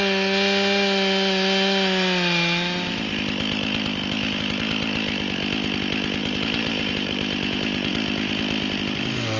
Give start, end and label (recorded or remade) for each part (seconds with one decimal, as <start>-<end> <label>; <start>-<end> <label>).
0.0-6.2 recorded; 6.2-7.9 remade; 7.9-9.4 recorded